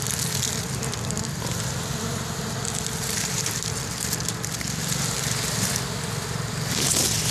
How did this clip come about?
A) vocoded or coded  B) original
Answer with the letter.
B